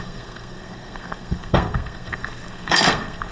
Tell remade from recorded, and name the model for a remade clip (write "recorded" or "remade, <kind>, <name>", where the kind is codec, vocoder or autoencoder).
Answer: remade, codec, SNAC